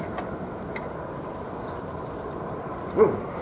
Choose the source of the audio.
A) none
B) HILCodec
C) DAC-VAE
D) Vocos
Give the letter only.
A